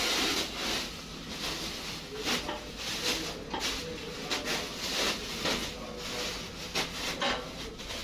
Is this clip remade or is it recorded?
recorded